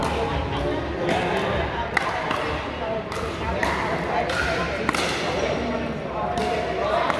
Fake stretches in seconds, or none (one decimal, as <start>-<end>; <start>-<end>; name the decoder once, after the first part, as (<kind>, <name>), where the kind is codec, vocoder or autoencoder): none